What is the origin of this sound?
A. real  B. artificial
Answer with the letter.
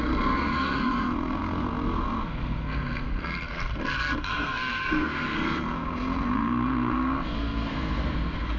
B